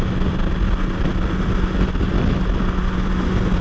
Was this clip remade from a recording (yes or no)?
no